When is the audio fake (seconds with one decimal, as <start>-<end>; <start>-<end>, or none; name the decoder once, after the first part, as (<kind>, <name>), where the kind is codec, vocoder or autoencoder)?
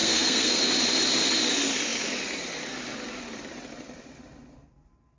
0.0-0.6 (codec, SNAC)